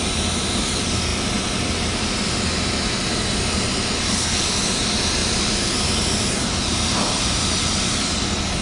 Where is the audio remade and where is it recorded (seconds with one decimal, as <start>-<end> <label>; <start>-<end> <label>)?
0.0-5.2 recorded; 5.2-7.0 remade; 7.0-8.6 recorded